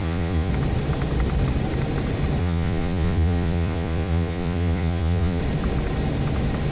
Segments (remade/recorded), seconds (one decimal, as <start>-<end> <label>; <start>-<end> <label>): 0.0-0.5 remade; 0.5-2.4 recorded; 2.4-5.4 remade; 5.4-6.7 recorded